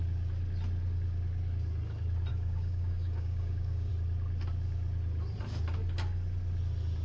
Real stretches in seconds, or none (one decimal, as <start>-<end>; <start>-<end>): 0.0-2.3; 3.9-7.0